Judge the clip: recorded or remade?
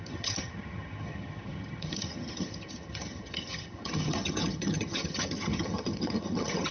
remade